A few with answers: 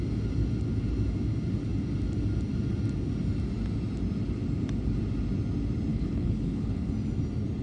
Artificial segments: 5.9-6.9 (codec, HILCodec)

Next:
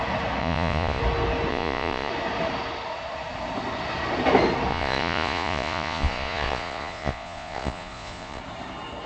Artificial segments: 0.4-1.0 (vocoder, Vocos); 1.5-2.1; 4.7-8.4

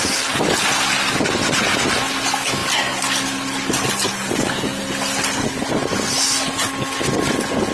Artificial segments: none

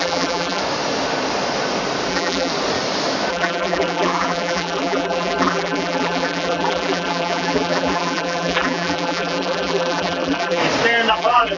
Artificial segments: 0.0-0.6 (vocoder, BigVGAN v2); 2.1-2.5; 3.3-10.6; 11.1-11.6

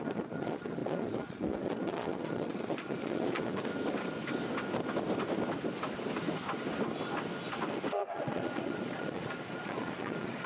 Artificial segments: 0.0-3.7 (vocoder, Vocos); 7.9-10.5

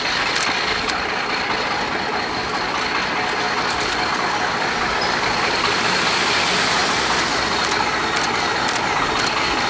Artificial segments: none

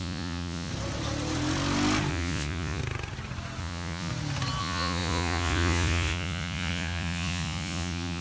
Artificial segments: 0.0-0.7 (vocoder, Vocos); 2.1-2.8; 3.6-4.1; 4.6-8.2